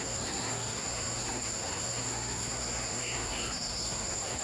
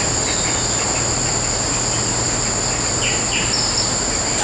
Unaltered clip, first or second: second